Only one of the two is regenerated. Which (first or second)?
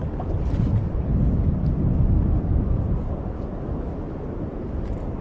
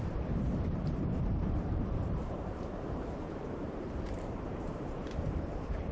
second